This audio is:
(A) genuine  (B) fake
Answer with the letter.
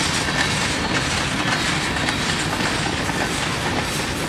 A